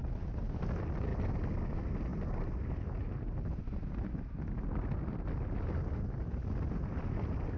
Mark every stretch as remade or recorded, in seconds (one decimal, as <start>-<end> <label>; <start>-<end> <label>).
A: 0.0-7.6 recorded